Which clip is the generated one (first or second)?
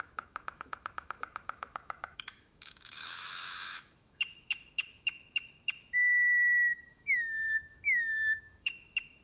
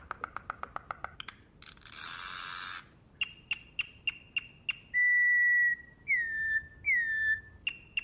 first